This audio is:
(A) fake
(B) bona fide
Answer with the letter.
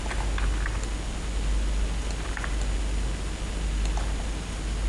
B